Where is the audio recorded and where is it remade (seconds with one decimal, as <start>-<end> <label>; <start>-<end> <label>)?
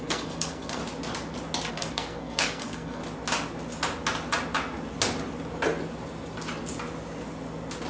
0.0-0.8 remade; 0.8-1.7 recorded; 1.7-3.0 remade; 3.0-7.9 recorded